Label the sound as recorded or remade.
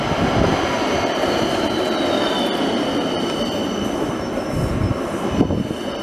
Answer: recorded